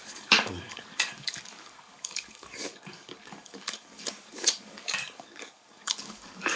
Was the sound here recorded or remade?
remade